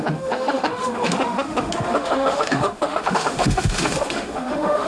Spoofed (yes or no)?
yes